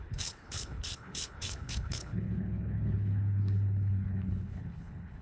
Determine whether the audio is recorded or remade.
remade